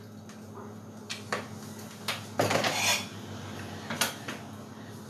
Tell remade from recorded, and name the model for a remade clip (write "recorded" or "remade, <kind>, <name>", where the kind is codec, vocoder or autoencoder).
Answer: recorded